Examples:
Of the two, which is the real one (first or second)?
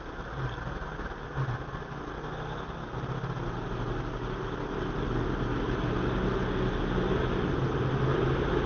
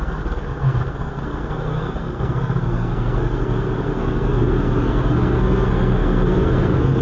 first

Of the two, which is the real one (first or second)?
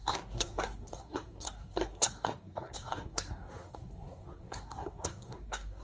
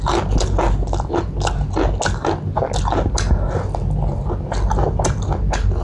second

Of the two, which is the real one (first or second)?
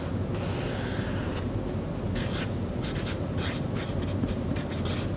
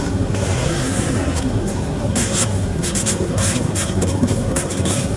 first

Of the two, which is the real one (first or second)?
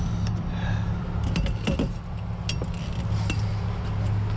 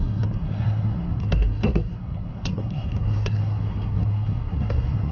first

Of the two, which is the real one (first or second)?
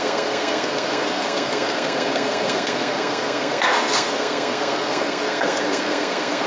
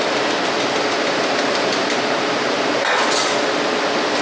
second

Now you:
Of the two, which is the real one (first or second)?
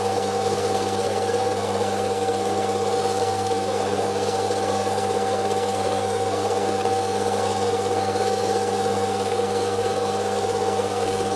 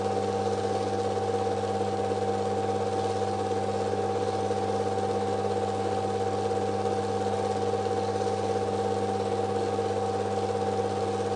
second